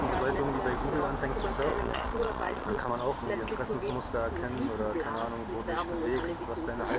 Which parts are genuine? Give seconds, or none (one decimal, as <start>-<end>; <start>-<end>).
0.0-1.7; 2.9-7.0